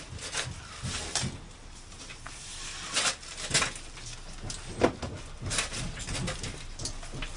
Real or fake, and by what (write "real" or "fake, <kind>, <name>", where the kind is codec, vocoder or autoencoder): real